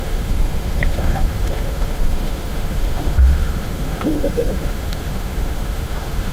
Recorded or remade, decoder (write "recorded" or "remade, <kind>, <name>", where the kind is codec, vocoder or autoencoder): remade, autoencoder, DAC-VAE